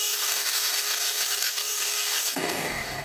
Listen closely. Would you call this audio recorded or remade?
remade